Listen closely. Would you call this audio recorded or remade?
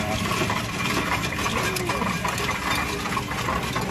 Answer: remade